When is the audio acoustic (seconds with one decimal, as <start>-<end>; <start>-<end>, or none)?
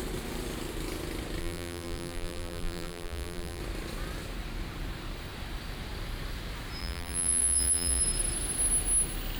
0.0-1.4; 3.6-6.8; 8.0-9.4